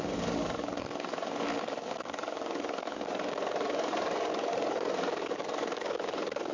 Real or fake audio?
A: fake